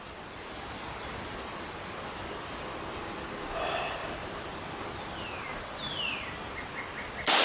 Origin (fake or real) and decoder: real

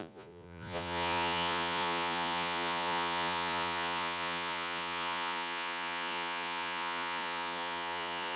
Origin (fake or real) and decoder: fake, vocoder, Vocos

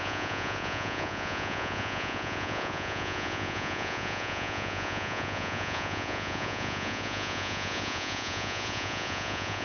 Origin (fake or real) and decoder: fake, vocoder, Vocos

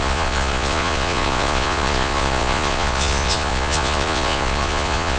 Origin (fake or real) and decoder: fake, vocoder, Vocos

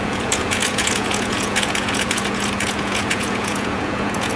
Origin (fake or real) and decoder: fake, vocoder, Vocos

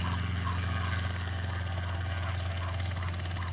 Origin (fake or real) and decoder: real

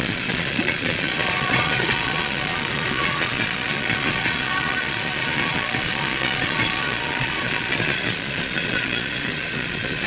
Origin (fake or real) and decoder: fake, vocoder, Vocos